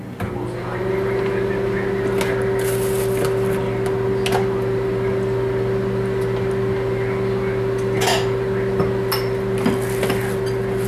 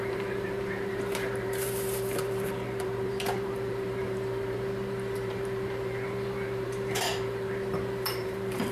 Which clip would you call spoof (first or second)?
second